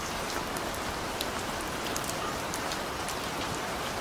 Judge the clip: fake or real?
fake